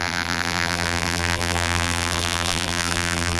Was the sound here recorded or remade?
remade